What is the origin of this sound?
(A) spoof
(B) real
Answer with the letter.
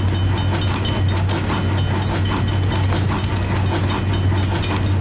B